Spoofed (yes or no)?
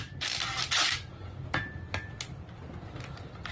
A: no